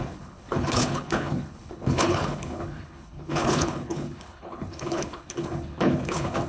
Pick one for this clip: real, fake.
fake